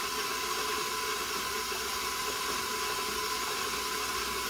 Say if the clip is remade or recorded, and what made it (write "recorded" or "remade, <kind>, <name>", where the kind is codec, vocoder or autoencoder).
recorded